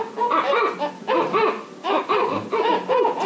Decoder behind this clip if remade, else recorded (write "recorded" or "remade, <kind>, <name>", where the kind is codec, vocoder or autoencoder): recorded